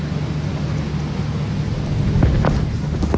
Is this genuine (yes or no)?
yes